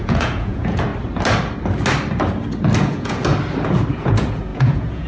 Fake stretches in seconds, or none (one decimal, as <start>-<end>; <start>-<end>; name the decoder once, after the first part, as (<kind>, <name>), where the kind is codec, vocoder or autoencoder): 0.0-0.9 (vocoder, Vocos); 2.8-3.2; 3.9-5.1